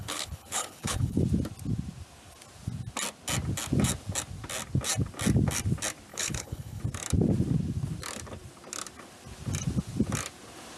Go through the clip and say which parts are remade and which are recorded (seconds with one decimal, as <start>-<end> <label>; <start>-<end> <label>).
0.0-1.2 remade; 1.2-6.1 recorded; 6.1-6.8 remade; 6.8-10.8 recorded